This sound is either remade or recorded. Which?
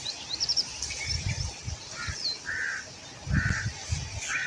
recorded